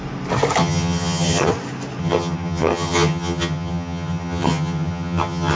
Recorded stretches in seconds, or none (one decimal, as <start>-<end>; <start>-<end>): 0.0-0.6; 1.5-2.0